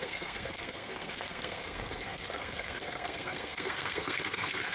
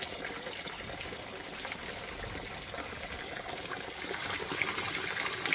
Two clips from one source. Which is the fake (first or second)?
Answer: first